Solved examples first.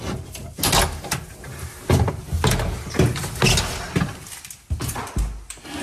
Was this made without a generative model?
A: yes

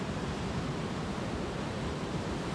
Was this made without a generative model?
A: no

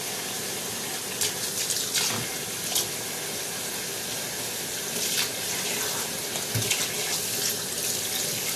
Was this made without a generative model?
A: yes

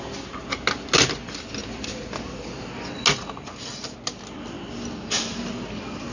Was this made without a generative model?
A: yes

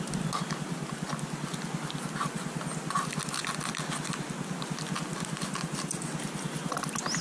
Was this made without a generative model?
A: yes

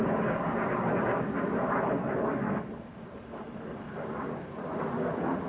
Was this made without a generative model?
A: yes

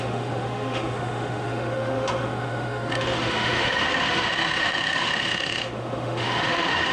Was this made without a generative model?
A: no